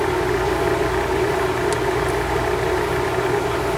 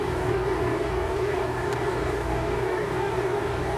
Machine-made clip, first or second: second